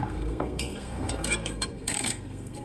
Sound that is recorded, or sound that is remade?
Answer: remade